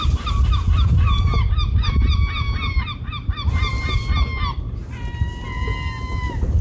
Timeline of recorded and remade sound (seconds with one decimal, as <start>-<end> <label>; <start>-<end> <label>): 0.0-1.5 recorded; 1.5-3.7 remade; 3.7-6.6 recorded